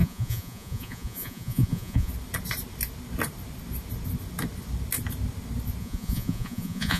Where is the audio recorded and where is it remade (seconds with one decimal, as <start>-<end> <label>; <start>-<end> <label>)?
0.0-2.1 remade; 2.1-5.8 recorded; 5.8-7.0 remade